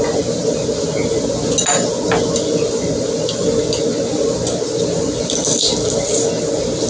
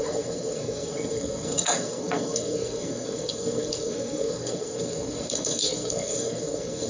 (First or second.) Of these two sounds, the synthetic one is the second